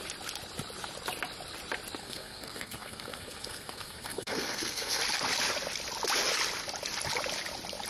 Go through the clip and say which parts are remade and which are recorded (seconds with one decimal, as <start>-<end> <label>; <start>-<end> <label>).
0.0-2.0 recorded; 2.0-5.0 remade; 5.0-7.9 recorded